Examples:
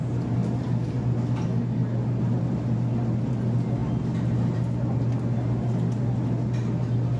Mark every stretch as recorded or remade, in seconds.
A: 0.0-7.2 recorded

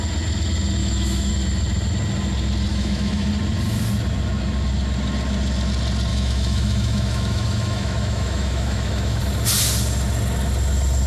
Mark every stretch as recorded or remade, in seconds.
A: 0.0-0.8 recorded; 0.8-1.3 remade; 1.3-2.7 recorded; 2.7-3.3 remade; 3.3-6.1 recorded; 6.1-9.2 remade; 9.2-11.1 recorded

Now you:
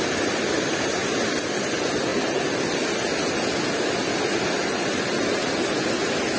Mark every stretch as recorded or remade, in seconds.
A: 0.0-6.4 recorded